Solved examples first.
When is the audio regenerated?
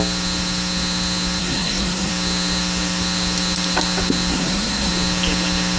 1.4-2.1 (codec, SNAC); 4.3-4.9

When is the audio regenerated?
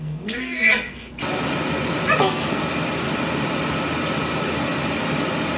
0.0-1.2 (codec, SNAC); 2.2-2.6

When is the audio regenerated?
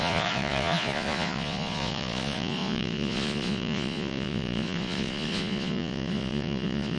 0.0-7.0 (vocoder, Vocos)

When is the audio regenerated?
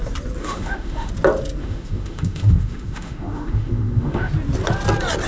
0.4-1.1 (autoencoder, DAC-VAE); 1.6-4.3